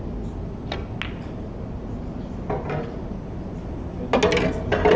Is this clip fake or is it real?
real